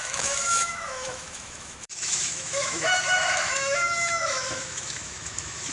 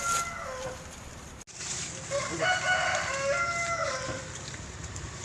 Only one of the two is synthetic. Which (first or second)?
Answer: first